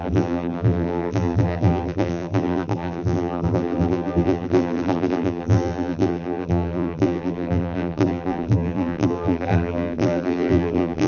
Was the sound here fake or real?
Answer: fake